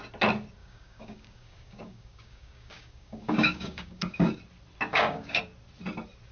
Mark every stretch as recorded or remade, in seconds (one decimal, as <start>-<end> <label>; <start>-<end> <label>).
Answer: 0.0-0.6 recorded; 0.6-4.4 remade; 4.4-4.9 recorded; 4.9-5.4 remade; 5.4-6.3 recorded